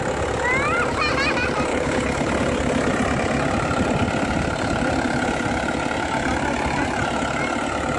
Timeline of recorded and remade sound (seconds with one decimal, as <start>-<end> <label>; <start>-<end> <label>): 0.0-1.7 recorded; 1.7-2.3 remade; 2.3-8.0 recorded